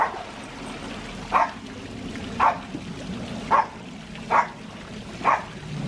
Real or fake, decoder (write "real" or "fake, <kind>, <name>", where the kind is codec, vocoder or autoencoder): real